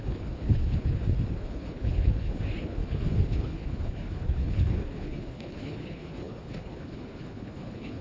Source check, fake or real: fake